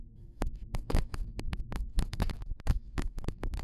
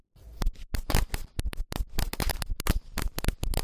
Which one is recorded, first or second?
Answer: second